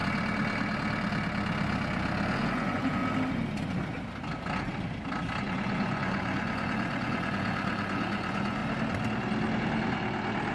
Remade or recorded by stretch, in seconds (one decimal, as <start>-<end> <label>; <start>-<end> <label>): 0.0-2.3 recorded; 2.3-3.0 remade; 3.0-5.4 recorded; 5.4-8.6 remade; 8.6-10.5 recorded